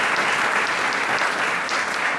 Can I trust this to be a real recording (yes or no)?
yes